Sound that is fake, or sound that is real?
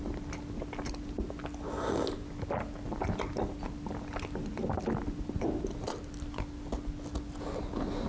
real